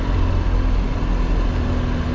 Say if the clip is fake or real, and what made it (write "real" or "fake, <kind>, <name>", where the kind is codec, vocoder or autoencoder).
real